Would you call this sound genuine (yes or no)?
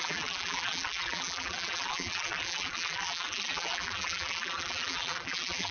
no